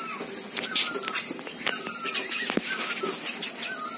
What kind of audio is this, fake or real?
real